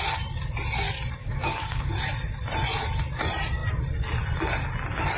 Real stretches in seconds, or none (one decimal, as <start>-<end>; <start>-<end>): 0.0-1.2; 1.9-5.2